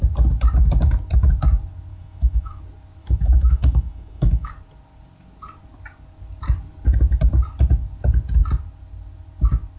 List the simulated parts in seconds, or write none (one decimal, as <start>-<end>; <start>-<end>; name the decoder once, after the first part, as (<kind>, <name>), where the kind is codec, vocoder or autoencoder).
1.9-2.6 (autoencoder, DAC-VAE); 3.0-4.5